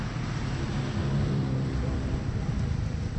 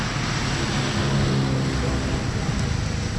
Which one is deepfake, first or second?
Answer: first